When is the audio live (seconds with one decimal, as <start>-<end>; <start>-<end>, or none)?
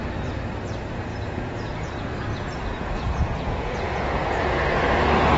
0.0-1.1; 1.9-2.3; 4.6-5.4